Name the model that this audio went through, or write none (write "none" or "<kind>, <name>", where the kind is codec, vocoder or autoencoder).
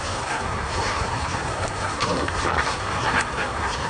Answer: codec, SNAC